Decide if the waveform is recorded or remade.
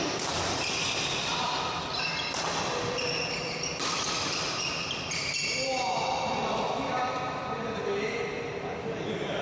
recorded